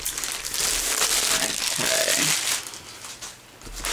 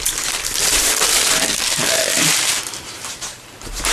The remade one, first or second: second